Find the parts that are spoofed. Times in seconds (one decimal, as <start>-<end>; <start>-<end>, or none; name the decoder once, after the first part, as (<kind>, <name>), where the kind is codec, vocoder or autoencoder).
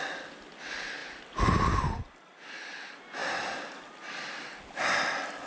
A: none